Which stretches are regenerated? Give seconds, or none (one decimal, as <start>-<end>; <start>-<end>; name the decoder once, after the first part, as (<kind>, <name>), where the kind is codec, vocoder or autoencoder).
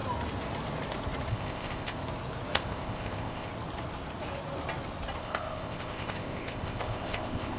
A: 1.3-2.0 (codec, ZipCodec); 2.5-3.5; 5.2-7.6